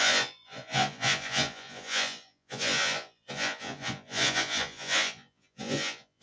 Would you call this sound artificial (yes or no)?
yes